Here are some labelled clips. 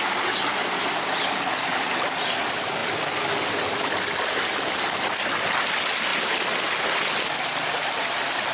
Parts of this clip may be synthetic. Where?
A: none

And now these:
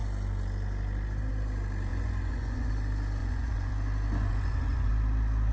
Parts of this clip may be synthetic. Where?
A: 1.9-2.7 (vocoder, Vocos); 3.2-3.7; 4.2-4.9

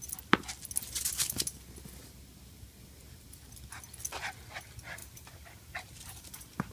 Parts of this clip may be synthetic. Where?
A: 5.0-6.7 (vocoder, BigVGAN v2)

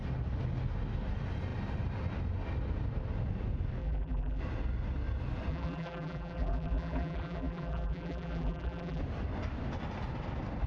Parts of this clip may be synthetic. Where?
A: 3.8-4.4 (vocoder, BigVGAN v2); 5.5-9.0

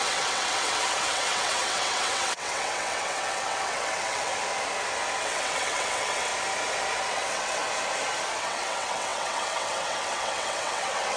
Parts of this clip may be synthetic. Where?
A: 0.0-4.3 (vocoder, WaveNeXt); 5.2-6.3; 7.1-7.6; 8.4-11.2